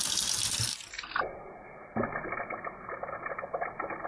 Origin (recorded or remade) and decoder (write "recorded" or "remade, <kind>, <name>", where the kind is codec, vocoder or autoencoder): recorded